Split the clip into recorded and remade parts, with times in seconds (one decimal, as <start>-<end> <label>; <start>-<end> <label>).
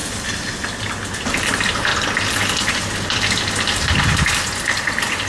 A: 0.0-1.4 recorded; 1.4-1.9 remade; 1.9-5.3 recorded